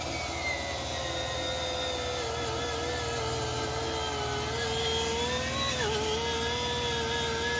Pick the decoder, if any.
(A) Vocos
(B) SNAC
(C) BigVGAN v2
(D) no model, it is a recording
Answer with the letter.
D